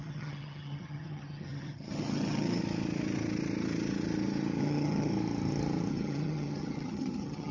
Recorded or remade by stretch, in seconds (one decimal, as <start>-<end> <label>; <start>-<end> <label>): 0.0-2.6 remade; 2.6-4.6 recorded; 4.6-5.1 remade; 5.1-5.9 recorded; 5.9-7.5 remade